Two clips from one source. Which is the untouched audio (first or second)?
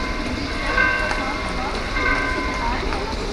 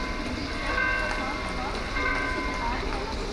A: second